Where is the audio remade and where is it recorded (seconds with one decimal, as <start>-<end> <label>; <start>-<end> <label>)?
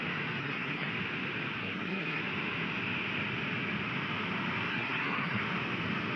0.0-0.4 recorded; 0.4-0.9 remade; 0.9-1.6 recorded; 1.6-2.2 remade; 2.2-4.7 recorded; 4.7-5.4 remade; 5.4-6.2 recorded